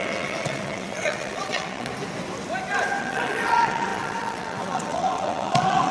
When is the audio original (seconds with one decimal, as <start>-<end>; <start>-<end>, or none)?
1.9-3.0